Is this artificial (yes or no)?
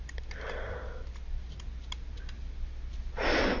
no